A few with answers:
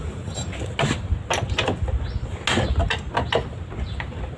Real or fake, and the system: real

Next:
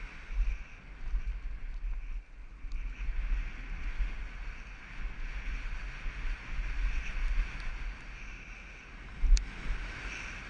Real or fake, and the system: real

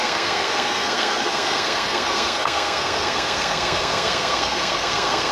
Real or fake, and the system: fake, codec, SNAC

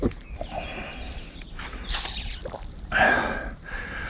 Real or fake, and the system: real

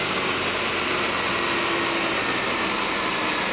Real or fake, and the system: real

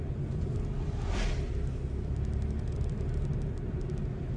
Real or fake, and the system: real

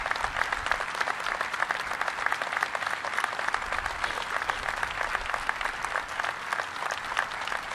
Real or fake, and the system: real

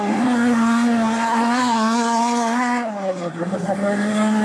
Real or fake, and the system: fake, codec, SNAC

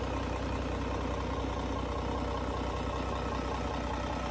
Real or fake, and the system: real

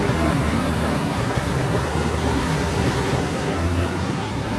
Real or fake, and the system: fake, codec, SNAC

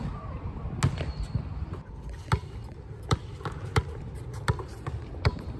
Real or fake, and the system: real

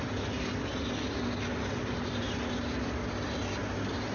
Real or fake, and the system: real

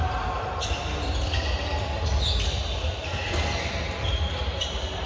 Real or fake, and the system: real